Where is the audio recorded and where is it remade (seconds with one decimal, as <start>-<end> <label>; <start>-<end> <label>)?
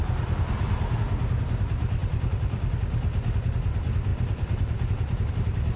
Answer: 0.0-1.2 remade; 1.2-2.0 recorded; 2.0-2.8 remade; 2.8-4.1 recorded; 4.1-5.3 remade; 5.3-5.8 recorded